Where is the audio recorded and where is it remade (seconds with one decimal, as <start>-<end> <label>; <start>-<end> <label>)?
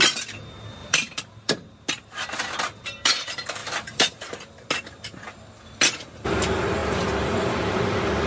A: 0.0-0.8 recorded; 0.8-1.5 remade; 1.5-3.6 recorded; 3.6-4.5 remade; 4.5-8.3 recorded